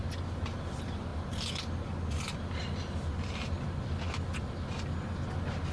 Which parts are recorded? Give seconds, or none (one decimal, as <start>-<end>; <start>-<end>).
0.0-5.7